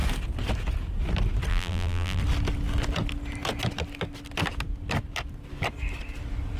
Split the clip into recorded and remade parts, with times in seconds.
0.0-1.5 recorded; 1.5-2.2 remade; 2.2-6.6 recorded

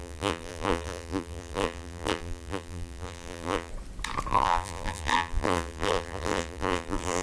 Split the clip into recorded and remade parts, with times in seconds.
0.0-3.7 remade; 3.7-4.3 recorded; 4.3-7.2 remade

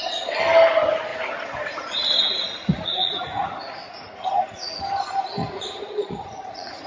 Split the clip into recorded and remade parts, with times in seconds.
0.0-1.1 recorded; 1.1-4.8 remade; 4.8-5.4 recorded; 5.4-6.9 remade

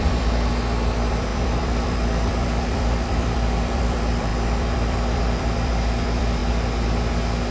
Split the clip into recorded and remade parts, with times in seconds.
0.0-6.4 remade; 6.4-7.5 recorded

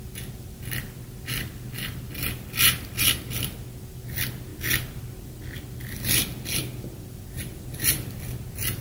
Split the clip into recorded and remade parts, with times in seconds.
0.0-8.8 recorded

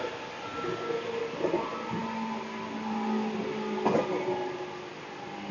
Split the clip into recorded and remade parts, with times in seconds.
0.0-5.5 recorded

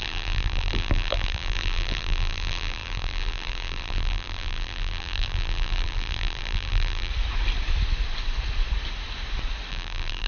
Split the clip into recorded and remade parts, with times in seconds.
0.0-7.1 remade; 7.1-9.7 recorded; 9.7-10.3 remade